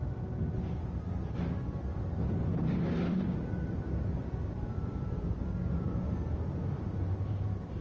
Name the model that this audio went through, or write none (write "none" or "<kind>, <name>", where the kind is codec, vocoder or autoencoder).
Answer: none